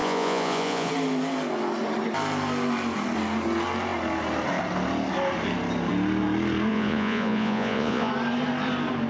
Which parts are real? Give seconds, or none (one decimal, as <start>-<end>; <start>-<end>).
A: 0.9-6.7; 8.1-9.1